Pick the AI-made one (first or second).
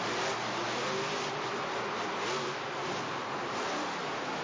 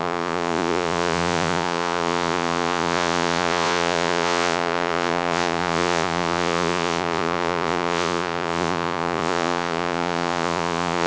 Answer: second